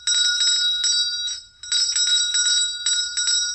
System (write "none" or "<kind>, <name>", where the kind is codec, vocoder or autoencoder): none